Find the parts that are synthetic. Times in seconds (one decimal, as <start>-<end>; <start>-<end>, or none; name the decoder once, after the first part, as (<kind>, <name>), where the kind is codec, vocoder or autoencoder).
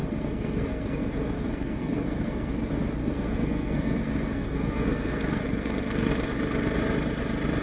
0.0-2.5 (codec, SNAC); 3.0-6.1